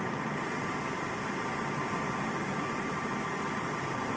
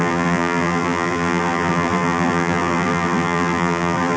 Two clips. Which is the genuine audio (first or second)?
first